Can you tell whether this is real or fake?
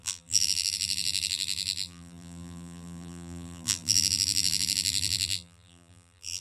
fake